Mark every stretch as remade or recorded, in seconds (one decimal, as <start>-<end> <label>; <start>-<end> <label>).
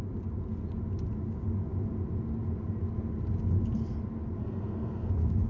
0.0-4.4 recorded; 4.4-5.1 remade; 5.1-5.5 recorded